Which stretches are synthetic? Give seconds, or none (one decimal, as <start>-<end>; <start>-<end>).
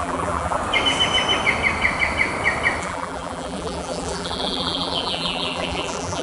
0.0-0.6; 2.8-6.2